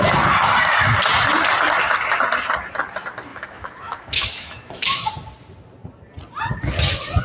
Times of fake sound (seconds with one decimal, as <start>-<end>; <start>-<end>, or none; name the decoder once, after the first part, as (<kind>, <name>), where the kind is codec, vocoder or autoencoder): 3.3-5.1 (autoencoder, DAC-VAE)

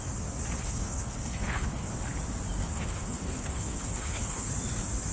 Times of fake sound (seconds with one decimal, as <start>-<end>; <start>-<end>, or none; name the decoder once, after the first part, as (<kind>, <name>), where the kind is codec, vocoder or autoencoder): 0.6-1.9 (codec, HILCodec); 2.6-4.5

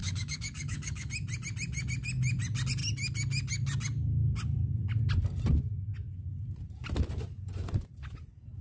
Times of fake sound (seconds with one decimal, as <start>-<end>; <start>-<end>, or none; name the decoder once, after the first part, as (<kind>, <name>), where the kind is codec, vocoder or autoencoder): 0.0-1.1 (codec, DAC)

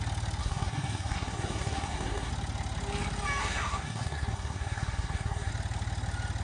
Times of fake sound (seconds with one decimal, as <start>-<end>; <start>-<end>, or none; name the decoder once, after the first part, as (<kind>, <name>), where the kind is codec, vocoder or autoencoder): 0.4-2.3 (codec, SNAC); 3.4-5.5